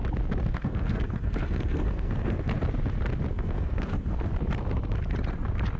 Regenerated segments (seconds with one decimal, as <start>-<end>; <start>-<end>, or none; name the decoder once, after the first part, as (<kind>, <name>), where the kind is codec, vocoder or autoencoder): 0.5-2.5 (codec, SNAC); 3.3-4.3